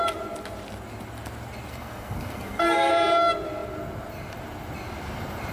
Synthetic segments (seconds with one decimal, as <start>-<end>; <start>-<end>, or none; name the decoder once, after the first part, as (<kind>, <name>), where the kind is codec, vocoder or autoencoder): 1.7-2.9 (codec, SNAC)